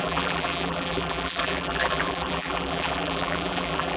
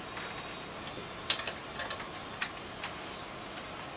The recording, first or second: second